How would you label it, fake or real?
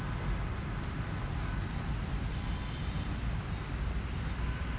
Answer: real